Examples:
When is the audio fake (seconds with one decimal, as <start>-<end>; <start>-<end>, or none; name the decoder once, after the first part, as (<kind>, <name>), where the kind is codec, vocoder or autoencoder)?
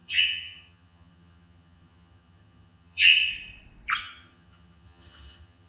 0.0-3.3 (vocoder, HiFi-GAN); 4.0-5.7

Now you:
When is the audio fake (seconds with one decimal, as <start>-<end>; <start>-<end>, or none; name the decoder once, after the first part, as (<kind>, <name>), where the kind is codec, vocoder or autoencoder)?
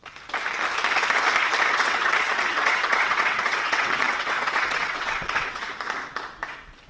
1.7-5.6 (vocoder, WaveNeXt)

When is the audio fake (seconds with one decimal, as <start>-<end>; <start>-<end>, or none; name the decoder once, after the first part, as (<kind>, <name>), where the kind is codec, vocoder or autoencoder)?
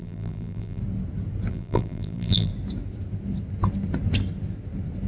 0.0-0.8 (vocoder, BigVGAN v2); 1.5-2.5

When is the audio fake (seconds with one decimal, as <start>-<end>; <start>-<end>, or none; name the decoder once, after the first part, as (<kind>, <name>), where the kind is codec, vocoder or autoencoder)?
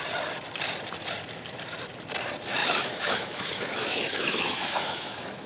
2.6-5.5 (autoencoder, DAC-VAE)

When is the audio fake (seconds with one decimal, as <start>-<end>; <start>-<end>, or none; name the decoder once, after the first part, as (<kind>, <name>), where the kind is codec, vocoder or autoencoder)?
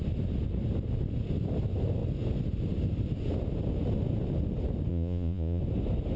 4.9-5.6 (vocoder, Vocos)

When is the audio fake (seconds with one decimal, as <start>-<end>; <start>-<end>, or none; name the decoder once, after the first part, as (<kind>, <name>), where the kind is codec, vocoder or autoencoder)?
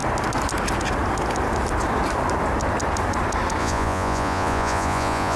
3.6-5.4 (vocoder, Vocos)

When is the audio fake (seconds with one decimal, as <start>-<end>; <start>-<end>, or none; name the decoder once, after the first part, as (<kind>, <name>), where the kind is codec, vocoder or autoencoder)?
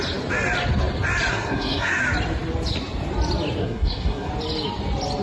1.3-2.0 (codec, SNAC); 3.6-4.3